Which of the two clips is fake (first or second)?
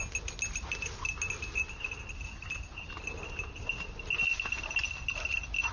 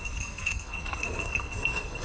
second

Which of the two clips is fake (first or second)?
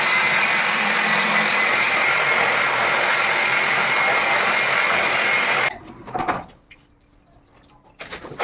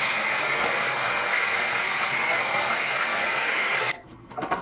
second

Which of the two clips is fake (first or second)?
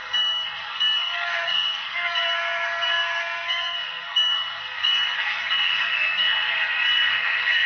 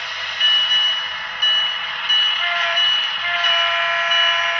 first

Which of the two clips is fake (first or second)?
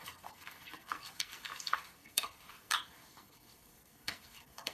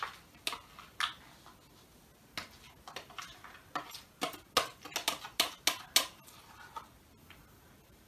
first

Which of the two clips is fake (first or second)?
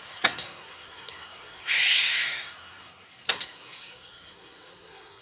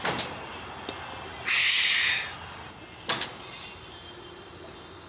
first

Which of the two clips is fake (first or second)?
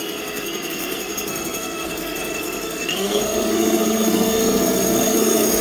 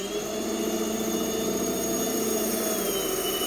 first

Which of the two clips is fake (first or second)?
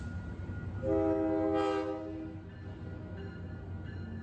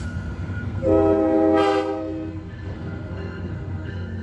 second